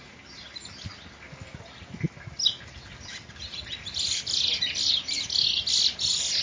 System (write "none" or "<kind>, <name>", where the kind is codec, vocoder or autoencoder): none